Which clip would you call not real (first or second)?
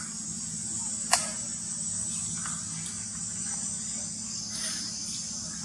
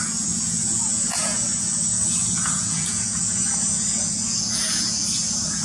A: second